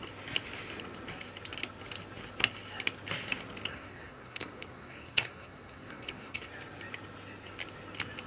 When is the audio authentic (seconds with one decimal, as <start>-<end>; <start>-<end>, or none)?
0.0-3.7; 6.5-8.3